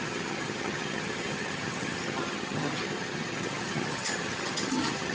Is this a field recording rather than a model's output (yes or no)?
no